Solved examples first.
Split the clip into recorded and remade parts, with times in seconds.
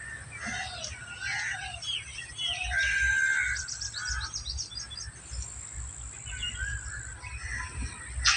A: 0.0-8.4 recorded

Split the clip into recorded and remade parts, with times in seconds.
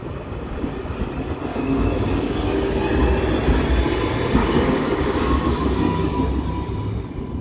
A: 0.0-0.9 remade; 0.9-1.5 recorded; 1.5-2.7 remade; 2.7-4.4 recorded; 4.4-6.2 remade; 6.2-7.4 recorded